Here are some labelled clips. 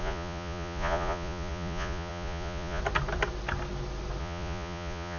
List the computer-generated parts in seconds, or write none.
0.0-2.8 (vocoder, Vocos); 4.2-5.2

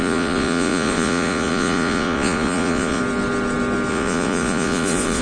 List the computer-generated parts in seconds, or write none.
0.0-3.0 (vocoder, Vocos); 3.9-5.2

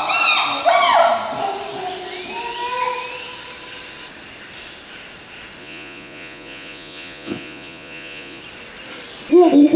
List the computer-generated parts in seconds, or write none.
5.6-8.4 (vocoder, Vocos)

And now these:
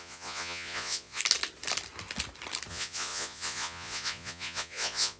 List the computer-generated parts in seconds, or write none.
0.0-1.2 (vocoder, Vocos); 2.7-5.2

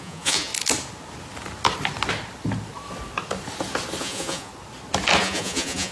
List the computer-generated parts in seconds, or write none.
0.0-0.5 (vocoder, Vocos); 4.0-4.5; 5.2-5.9

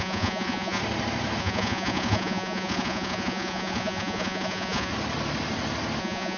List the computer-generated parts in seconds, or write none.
0.0-0.8 (vocoder, Vocos); 1.4-4.9; 6.0-6.4

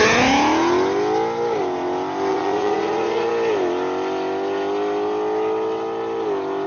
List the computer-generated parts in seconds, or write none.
2.3-3.3 (vocoder, Vocos)